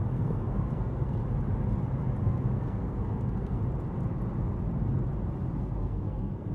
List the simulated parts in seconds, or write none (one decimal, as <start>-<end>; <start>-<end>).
0.0-1.2; 2.2-3.6; 5.6-6.5